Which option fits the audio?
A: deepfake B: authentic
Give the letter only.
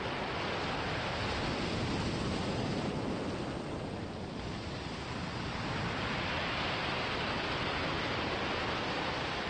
B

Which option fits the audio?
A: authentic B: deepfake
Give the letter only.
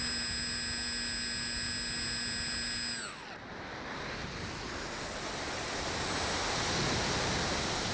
A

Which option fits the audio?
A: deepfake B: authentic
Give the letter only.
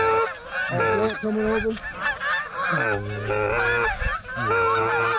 B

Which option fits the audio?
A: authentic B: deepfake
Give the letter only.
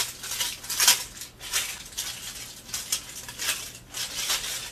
A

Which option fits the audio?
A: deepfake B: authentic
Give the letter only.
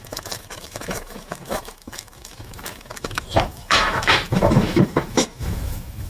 A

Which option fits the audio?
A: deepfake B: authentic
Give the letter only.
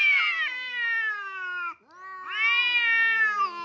B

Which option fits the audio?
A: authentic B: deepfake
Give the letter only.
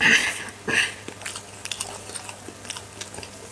A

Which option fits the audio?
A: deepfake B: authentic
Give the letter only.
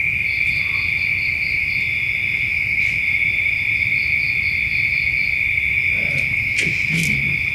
B